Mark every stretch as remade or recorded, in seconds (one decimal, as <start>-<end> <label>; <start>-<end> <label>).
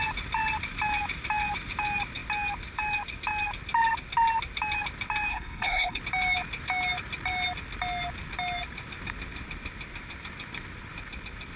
0.0-5.3 recorded; 5.3-6.0 remade; 6.0-11.6 recorded